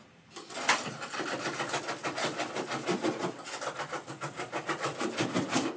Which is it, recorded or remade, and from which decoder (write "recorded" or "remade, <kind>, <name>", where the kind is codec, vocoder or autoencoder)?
recorded